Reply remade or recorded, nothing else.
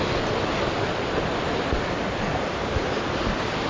recorded